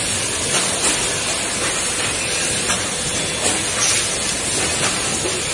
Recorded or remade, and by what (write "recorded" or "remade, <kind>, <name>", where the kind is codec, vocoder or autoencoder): recorded